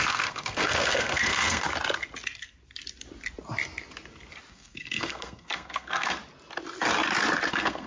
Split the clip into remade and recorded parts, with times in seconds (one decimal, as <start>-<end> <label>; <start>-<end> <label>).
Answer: 0.0-1.7 remade; 1.7-4.5 recorded; 4.5-6.2 remade; 6.2-7.5 recorded; 7.5-7.9 remade